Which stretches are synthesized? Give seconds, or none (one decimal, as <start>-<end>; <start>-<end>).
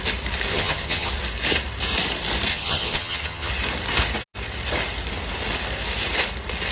0.5-1.1; 2.5-3.5